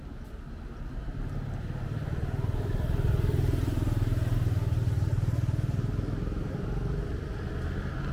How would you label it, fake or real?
real